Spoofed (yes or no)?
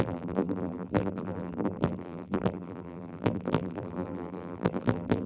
yes